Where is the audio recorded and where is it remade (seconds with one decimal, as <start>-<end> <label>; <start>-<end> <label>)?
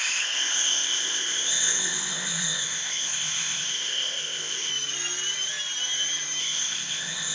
0.0-4.7 remade; 4.7-6.4 recorded; 6.4-7.3 remade